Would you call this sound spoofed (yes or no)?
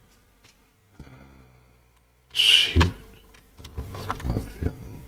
no